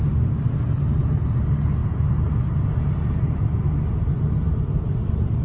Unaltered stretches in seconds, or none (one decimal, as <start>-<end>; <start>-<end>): 0.0-5.4